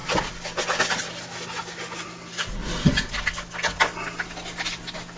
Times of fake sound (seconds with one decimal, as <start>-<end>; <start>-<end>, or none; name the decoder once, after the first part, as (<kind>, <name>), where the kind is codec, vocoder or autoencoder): none